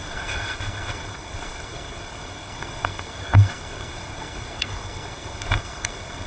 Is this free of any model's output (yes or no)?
no